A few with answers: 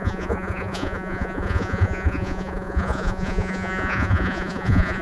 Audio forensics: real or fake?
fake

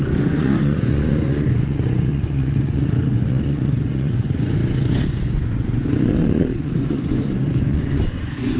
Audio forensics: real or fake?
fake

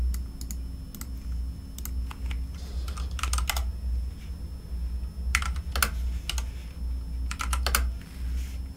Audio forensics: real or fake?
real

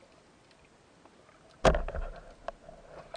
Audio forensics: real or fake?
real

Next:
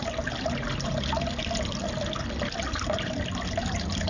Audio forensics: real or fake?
real